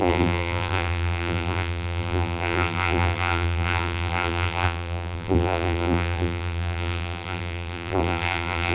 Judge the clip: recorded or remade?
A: remade